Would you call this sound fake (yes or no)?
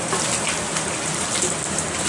no